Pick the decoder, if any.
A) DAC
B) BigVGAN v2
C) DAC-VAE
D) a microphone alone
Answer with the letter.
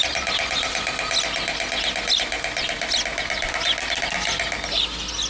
D